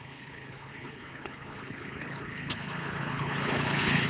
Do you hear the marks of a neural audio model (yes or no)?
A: yes